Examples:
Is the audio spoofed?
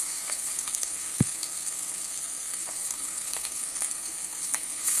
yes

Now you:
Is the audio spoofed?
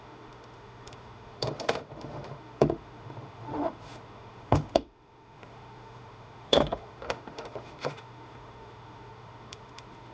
yes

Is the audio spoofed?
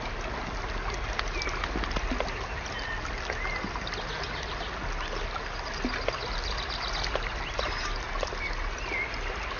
no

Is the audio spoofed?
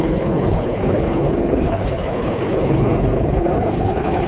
yes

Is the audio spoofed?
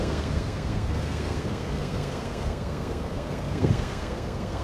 yes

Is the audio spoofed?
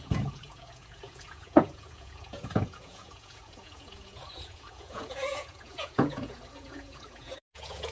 yes